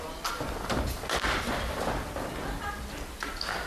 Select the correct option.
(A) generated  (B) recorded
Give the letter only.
B